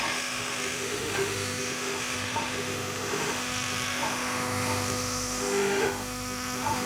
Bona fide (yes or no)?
no